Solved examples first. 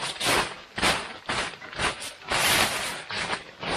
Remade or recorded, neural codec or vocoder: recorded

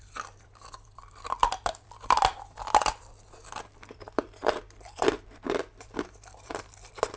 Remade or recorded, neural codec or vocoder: remade, vocoder, BigVGAN v2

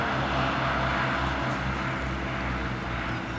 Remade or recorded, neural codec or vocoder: recorded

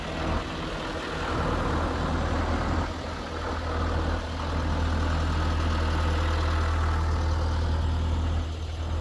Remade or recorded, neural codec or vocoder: recorded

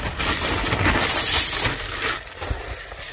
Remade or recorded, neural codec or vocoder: recorded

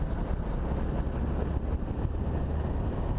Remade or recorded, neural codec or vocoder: recorded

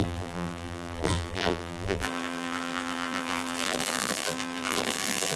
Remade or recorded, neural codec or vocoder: remade, vocoder, BigVGAN v2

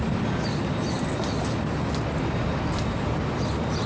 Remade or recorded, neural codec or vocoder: recorded